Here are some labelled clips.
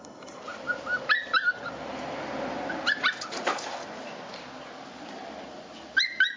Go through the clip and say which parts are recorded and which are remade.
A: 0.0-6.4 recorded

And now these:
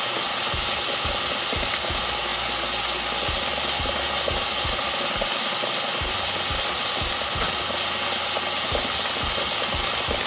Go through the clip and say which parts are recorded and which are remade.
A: 0.0-10.3 recorded

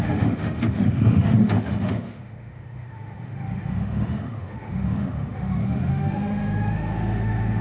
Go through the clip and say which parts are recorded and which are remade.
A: 0.0-7.6 remade